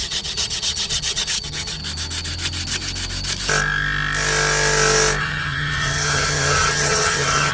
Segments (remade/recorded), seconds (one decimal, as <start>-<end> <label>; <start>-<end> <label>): 0.0-1.8 remade; 1.8-5.2 recorded; 5.2-7.5 remade

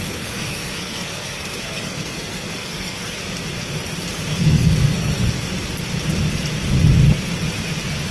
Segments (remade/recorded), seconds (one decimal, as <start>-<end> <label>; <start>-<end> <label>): 0.0-3.2 remade; 3.2-4.3 recorded; 4.3-5.2 remade; 5.2-8.1 recorded

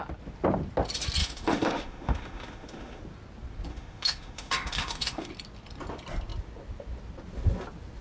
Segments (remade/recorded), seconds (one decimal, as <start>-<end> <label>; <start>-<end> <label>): 0.0-1.2 recorded; 1.2-3.0 remade; 3.0-3.7 recorded; 3.7-5.3 remade; 5.3-8.0 recorded

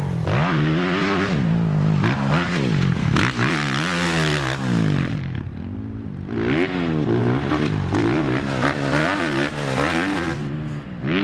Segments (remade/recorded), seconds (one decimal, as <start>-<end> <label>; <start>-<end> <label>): 0.0-3.0 recorded; 3.0-3.5 remade; 3.5-11.2 recorded

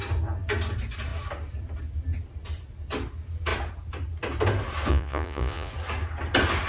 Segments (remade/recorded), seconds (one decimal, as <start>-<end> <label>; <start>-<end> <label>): 0.0-4.9 recorded; 4.9-5.7 remade; 5.7-6.7 recorded